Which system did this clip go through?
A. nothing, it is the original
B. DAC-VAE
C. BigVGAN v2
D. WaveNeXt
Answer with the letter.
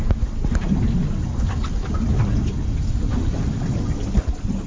A